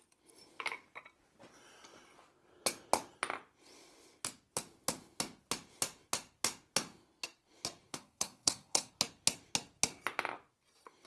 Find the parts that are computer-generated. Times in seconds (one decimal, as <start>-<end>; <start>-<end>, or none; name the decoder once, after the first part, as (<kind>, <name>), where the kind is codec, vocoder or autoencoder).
7.9-8.9 (codec, SNAC)